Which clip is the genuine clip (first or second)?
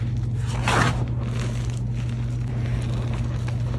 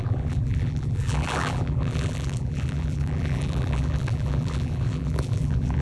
first